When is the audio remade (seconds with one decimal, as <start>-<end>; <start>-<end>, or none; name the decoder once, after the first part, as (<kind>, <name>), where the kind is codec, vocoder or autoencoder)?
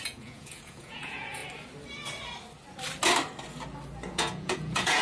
0.0-1.4 (vocoder, Vocos); 4.1-5.0